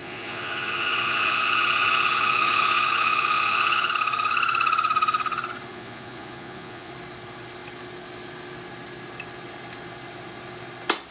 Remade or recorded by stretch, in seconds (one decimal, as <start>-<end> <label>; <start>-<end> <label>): 0.0-3.9 remade; 3.9-5.7 recorded; 5.7-6.9 remade; 6.9-11.1 recorded